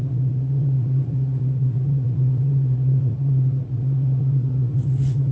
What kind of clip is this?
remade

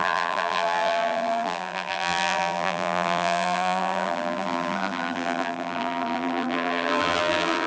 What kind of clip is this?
remade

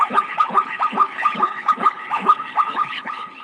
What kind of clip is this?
remade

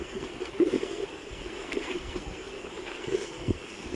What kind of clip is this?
remade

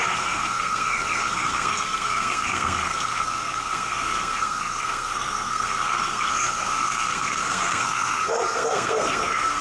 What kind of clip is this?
remade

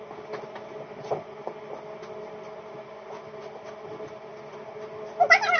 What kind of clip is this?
recorded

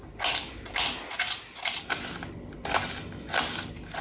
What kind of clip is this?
recorded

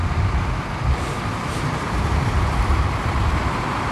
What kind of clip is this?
remade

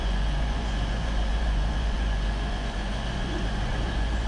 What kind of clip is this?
remade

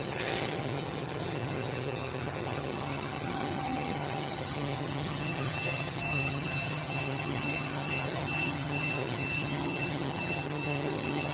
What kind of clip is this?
remade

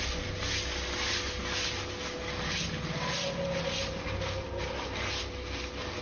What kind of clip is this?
recorded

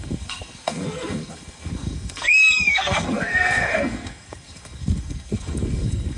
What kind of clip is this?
remade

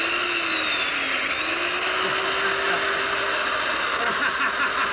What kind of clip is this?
recorded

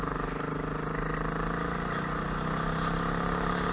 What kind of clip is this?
recorded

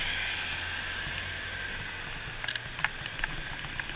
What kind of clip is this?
recorded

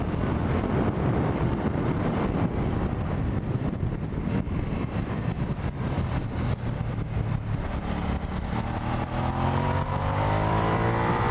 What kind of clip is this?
remade